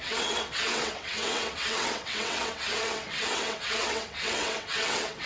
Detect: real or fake fake